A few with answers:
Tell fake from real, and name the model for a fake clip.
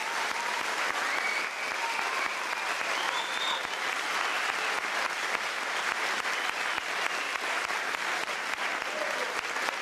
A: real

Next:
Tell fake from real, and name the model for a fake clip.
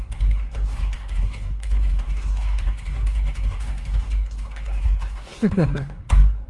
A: fake, codec, SNAC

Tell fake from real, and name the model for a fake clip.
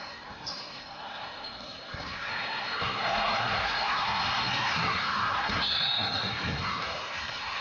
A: fake, codec, SNAC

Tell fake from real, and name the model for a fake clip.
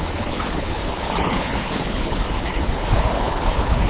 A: fake, codec, HILCodec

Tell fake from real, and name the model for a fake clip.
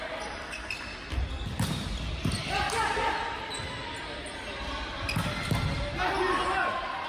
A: real